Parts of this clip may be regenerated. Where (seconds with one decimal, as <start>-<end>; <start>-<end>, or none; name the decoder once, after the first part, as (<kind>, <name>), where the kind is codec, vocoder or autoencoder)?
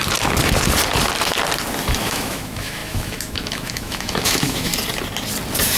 2.0-4.7 (autoencoder, DAC-VAE)